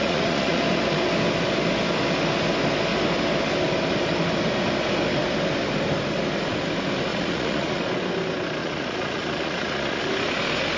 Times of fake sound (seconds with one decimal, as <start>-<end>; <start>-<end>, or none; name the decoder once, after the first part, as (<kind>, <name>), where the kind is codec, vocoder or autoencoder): 0.0-0.6 (vocoder, Vocos); 7.1-7.8; 8.6-10.0